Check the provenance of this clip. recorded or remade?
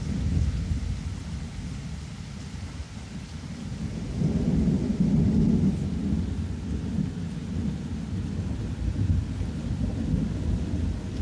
recorded